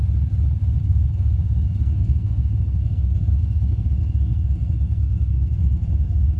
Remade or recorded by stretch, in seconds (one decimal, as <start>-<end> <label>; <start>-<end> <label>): 0.0-0.8 recorded; 0.8-6.4 remade